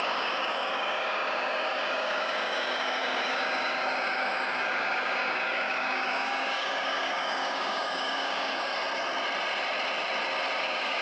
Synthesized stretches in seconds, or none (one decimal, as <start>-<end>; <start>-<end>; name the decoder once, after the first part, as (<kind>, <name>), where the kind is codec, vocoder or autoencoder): 0.0-8.7 (codec, DAC); 10.6-11.0